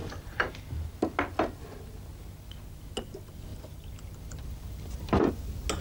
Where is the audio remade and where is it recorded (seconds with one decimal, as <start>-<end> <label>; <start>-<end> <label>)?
0.0-0.7 remade; 0.7-3.5 recorded; 3.5-5.3 remade; 5.3-5.8 recorded